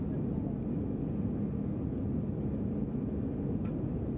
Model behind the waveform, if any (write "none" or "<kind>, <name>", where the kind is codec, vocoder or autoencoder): none